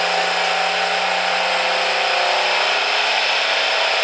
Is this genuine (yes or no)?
yes